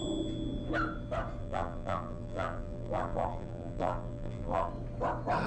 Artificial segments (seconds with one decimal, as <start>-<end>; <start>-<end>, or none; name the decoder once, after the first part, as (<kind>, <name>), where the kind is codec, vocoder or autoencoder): 1.4-4.7 (vocoder, BigVGAN v2)